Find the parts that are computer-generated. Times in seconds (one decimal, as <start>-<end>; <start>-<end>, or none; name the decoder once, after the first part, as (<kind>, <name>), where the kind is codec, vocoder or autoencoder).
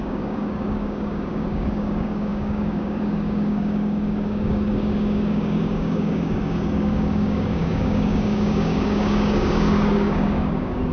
0.0-10.9 (codec, DAC)